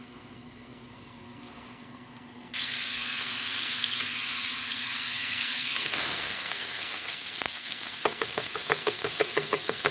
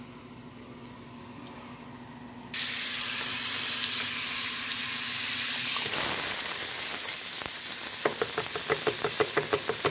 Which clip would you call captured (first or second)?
second